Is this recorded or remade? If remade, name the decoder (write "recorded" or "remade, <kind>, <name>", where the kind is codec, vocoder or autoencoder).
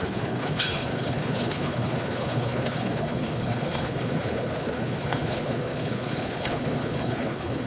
remade, codec, HILCodec